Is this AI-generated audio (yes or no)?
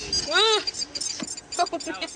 no